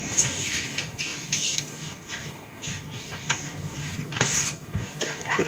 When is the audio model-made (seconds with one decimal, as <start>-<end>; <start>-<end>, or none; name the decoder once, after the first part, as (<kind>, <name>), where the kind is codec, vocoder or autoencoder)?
0.0-5.5 (codec, DAC)